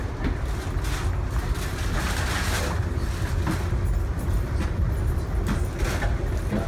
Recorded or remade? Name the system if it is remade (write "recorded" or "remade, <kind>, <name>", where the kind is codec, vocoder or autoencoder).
recorded